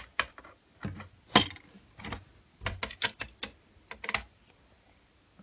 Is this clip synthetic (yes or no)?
no